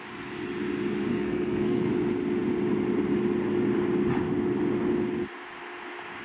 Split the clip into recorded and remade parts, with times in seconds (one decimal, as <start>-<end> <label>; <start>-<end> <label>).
0.0-1.1 recorded; 1.1-1.9 remade; 1.9-6.2 recorded